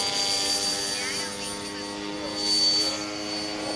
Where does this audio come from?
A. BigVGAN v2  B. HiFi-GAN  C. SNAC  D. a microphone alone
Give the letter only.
D